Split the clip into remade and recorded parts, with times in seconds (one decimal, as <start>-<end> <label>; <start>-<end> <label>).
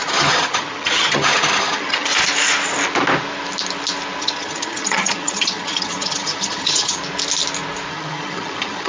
0.0-2.1 remade; 2.1-4.2 recorded; 4.2-7.0 remade; 7.0-7.9 recorded; 7.9-8.9 remade